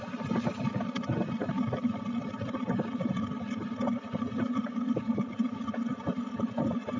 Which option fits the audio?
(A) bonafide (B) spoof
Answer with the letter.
A